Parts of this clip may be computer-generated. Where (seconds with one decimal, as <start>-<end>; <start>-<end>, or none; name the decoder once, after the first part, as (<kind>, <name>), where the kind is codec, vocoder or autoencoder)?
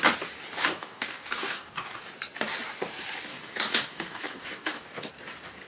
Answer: 0.6-2.0 (codec, DAC); 3.3-5.1